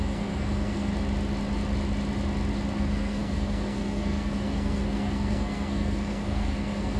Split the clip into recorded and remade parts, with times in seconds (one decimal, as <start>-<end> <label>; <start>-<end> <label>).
0.0-0.9 remade; 0.9-2.8 recorded; 2.8-7.0 remade